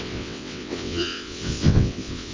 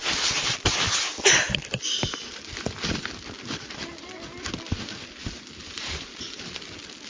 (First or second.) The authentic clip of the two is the second